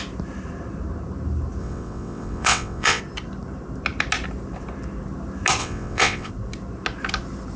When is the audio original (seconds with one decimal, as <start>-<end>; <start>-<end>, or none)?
0.0-1.6; 3.0-5.6; 6.3-7.6